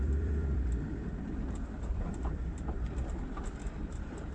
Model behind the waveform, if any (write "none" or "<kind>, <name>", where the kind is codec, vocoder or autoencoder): vocoder, BigVGAN v2